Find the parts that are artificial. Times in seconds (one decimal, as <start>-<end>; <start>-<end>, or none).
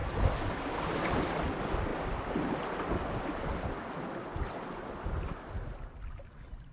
none